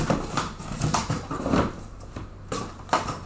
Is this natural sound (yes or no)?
no